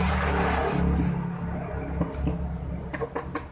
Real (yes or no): yes